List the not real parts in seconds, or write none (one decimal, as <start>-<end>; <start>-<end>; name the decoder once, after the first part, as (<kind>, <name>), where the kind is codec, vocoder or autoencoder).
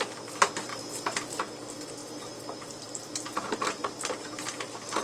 2.0-5.0 (vocoder, BigVGAN v2)